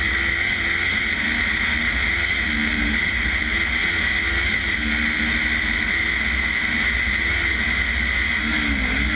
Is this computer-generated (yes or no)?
no